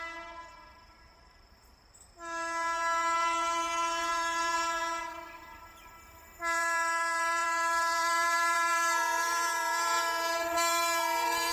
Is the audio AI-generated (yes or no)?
yes